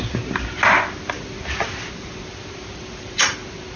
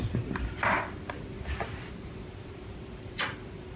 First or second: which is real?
first